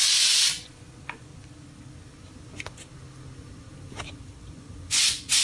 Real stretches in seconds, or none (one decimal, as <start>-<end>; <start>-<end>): 1.3-4.5